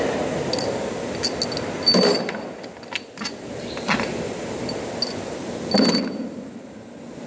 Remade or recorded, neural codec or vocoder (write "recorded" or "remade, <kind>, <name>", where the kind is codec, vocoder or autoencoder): recorded